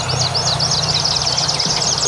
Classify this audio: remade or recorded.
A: recorded